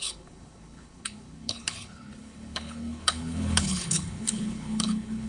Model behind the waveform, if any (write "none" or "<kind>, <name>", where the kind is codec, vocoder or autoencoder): codec, HILCodec